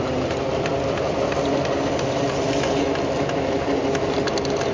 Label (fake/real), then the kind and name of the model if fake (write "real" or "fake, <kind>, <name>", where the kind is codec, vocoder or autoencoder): real